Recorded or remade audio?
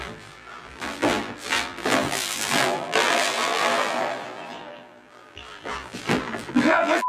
remade